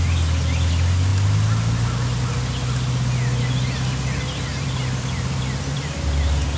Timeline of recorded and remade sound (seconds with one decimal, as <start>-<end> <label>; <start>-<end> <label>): 0.0-4.5 recorded; 4.5-5.4 remade; 5.4-6.6 recorded